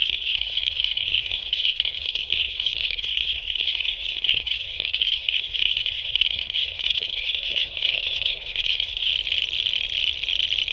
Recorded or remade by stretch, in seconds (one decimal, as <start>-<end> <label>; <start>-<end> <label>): 0.0-9.1 remade; 9.1-10.7 recorded